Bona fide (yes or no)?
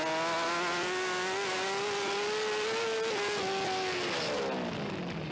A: yes